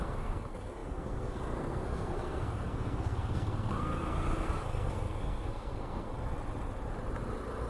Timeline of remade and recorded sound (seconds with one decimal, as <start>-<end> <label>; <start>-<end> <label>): 0.0-6.1 remade; 6.1-7.7 recorded

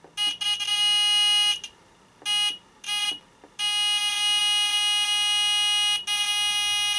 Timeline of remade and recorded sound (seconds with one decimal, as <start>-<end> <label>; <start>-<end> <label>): 0.0-7.0 recorded

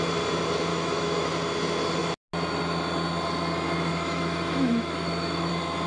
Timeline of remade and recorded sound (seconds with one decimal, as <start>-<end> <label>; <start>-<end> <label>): 0.0-0.7 recorded; 0.7-1.3 remade; 1.3-3.9 recorded; 3.9-5.5 remade; 5.5-5.9 recorded

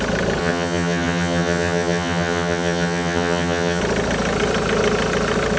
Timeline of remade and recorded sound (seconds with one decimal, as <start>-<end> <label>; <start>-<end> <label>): 0.0-0.4 recorded; 0.4-3.8 remade; 3.8-5.6 recorded

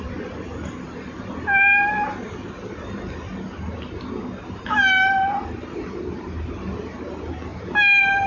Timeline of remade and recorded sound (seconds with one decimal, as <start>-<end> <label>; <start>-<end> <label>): 0.0-8.3 recorded

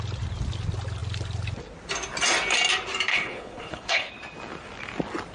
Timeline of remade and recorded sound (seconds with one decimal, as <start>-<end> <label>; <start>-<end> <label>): 0.0-3.1 recorded; 3.1-4.1 remade; 4.1-5.3 recorded

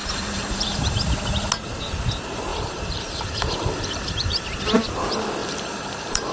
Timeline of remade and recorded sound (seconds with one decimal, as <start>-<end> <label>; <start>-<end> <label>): 0.0-1.0 remade; 1.0-2.5 recorded; 2.5-4.4 remade; 4.4-5.4 recorded; 5.4-6.3 remade